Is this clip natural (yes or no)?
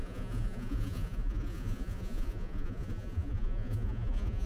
no